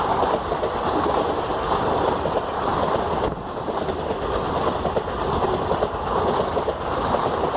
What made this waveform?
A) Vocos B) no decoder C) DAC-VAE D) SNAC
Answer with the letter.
B